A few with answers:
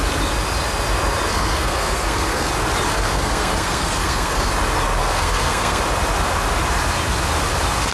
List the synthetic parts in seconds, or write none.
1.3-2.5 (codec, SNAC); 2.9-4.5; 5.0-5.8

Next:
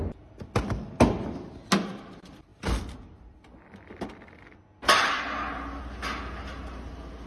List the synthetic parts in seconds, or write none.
none